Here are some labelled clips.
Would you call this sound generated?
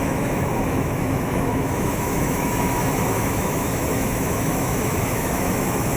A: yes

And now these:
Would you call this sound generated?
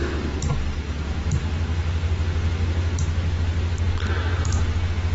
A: no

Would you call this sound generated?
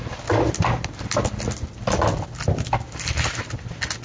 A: no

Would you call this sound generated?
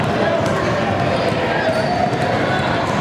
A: no